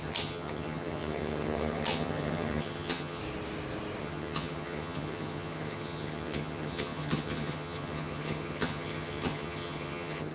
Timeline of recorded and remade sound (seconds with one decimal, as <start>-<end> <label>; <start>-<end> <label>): 0.0-3.2 remade; 3.2-4.0 recorded; 4.0-10.3 remade